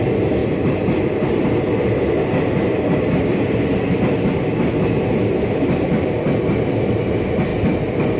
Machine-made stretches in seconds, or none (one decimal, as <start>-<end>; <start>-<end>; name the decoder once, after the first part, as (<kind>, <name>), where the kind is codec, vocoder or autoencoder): 7.5-8.2 (vocoder, BigVGAN v2)